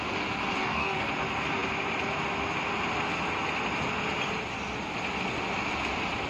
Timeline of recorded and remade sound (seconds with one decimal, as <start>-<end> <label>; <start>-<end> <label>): 0.0-0.6 recorded; 0.6-1.1 remade; 1.1-6.3 recorded